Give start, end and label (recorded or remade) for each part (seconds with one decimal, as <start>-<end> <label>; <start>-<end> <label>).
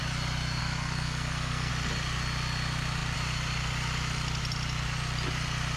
0.0-0.6 recorded; 0.6-1.7 remade; 1.7-5.8 recorded